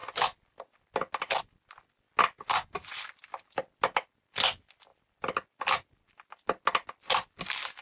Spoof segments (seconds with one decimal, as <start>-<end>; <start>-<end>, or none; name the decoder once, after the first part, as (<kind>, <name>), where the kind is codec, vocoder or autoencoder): none